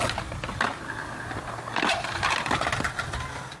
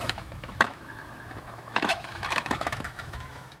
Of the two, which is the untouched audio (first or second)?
first